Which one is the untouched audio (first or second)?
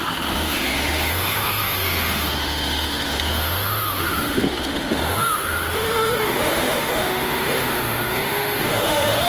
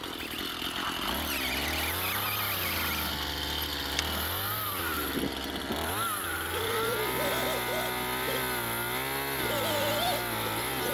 second